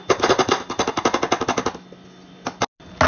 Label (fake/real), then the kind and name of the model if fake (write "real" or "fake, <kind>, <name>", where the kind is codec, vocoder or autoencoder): real